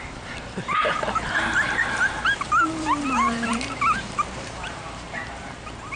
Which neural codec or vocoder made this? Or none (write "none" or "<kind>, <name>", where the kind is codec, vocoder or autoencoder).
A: vocoder, BigVGAN v2